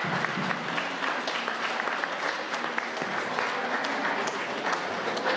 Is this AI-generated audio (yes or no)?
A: no